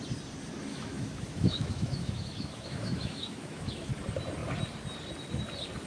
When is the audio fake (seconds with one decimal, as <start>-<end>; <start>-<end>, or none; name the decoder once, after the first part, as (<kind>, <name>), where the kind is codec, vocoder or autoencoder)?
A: 0.7-3.9 (autoencoder, DAC-VAE)